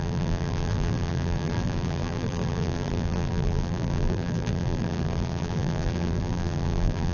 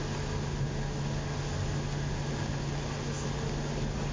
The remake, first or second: first